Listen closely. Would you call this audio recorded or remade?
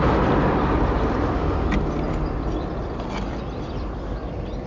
remade